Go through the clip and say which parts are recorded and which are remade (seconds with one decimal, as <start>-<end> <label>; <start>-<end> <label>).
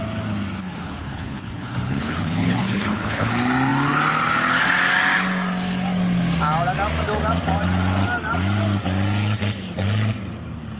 0.0-0.6 recorded; 0.6-3.3 remade; 3.3-10.8 recorded